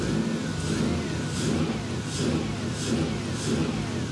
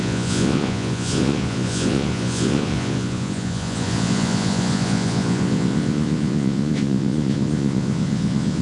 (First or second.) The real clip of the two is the first